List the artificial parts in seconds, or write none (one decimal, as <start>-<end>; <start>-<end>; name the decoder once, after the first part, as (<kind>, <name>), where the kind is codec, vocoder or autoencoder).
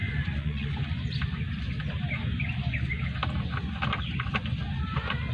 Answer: 0.0-1.0 (vocoder, Vocos)